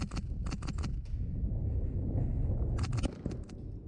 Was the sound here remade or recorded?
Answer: recorded